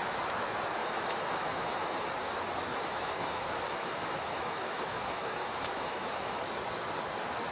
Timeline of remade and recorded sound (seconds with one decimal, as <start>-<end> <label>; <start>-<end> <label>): 0.0-0.8 recorded; 0.8-2.1 remade; 2.1-2.7 recorded; 2.7-6.4 remade; 6.4-7.5 recorded